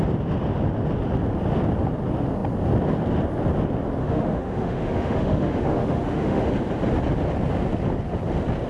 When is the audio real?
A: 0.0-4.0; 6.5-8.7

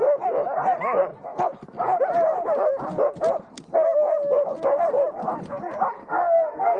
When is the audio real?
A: 0.0-6.0

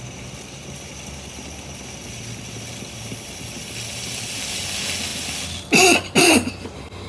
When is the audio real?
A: 0.0-7.1

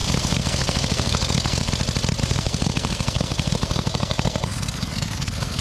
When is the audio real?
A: 1.7-2.2

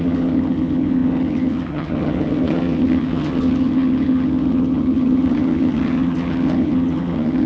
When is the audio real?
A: none

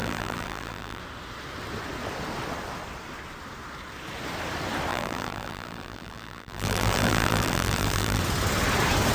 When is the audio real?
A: 1.0-4.9; 8.2-9.1

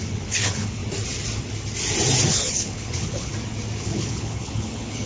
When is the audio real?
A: 0.8-2.3; 3.3-3.8

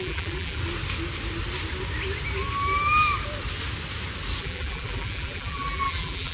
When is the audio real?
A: 0.6-4.4